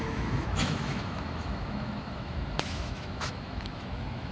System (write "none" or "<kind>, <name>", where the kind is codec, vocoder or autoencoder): autoencoder, DAC-VAE